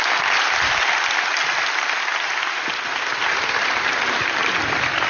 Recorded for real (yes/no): yes